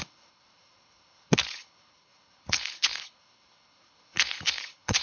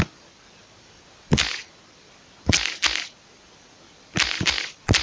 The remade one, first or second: first